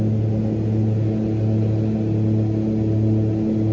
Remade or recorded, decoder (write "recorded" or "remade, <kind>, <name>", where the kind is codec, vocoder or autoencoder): recorded